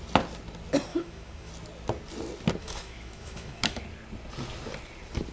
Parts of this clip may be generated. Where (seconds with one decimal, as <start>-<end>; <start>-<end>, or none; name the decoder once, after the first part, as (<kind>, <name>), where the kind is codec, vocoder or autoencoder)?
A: 0.9-1.5 (autoencoder, DAC-VAE); 2.6-3.8